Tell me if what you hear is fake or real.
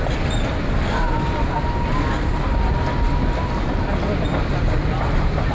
real